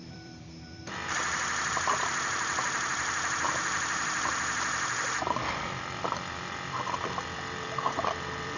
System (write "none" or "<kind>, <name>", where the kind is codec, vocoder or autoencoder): vocoder, BigVGAN v2